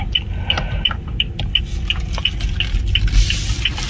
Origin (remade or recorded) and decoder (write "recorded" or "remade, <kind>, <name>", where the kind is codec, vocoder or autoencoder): recorded